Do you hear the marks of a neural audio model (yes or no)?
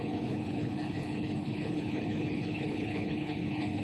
yes